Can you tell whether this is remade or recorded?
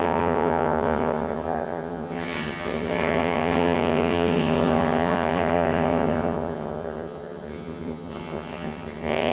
remade